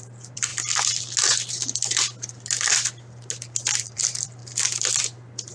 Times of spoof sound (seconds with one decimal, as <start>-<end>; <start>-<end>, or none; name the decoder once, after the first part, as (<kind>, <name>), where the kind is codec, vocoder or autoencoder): 0.0-0.5 (vocoder, BigVGAN v2); 3.8-4.4